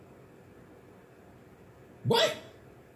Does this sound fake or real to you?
real